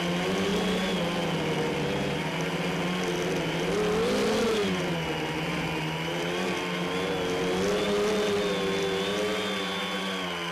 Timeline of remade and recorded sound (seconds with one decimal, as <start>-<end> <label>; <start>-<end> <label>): 0.0-10.5 recorded